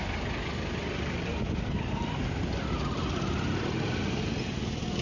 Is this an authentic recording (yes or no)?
yes